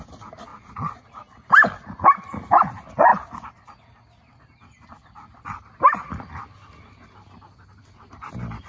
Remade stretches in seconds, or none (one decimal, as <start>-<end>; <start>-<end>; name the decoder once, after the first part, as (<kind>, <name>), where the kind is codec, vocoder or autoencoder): none